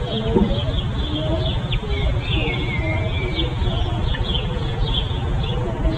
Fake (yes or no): no